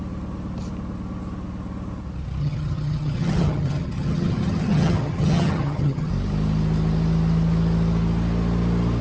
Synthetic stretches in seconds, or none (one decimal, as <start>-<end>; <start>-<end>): 2.4-6.1